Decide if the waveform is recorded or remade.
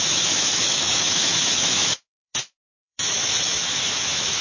remade